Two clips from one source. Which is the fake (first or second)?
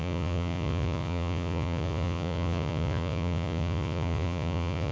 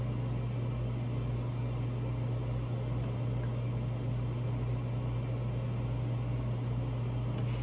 first